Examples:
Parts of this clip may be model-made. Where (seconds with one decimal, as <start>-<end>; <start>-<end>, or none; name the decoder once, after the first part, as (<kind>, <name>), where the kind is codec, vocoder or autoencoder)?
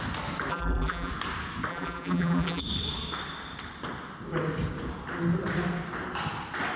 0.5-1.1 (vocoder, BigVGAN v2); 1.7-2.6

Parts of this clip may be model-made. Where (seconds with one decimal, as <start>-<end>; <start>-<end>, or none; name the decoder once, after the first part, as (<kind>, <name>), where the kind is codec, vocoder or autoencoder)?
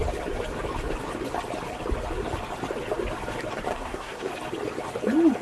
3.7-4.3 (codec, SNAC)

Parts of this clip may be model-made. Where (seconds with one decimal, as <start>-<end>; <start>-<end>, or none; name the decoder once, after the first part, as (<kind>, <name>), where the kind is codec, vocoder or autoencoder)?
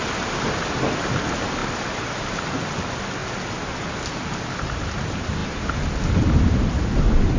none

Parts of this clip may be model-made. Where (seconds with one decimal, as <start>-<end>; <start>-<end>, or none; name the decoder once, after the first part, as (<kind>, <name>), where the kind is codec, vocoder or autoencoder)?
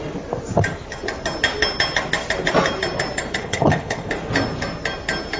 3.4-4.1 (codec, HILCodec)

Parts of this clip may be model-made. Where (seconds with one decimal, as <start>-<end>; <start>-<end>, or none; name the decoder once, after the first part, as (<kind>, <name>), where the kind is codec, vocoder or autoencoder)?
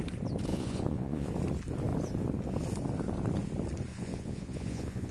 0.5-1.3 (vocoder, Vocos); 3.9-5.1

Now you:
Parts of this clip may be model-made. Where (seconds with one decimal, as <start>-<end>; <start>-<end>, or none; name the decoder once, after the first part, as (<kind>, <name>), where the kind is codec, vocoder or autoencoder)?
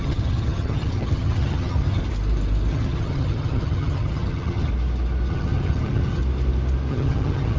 0.0-2.0 (vocoder, HiFi-GAN); 2.7-4.7; 5.3-6.2; 6.9-7.6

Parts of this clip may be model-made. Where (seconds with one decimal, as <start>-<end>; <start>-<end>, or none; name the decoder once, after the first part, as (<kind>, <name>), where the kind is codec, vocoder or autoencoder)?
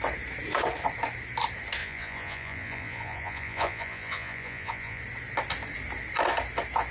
1.8-5.0 (vocoder, Vocos)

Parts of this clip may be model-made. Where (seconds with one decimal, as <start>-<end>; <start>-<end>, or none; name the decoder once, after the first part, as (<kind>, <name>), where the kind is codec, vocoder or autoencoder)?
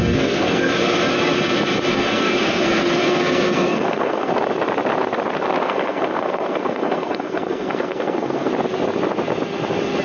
0.0-0.7 (codec, SNAC); 1.9-4.3; 5.6-8.5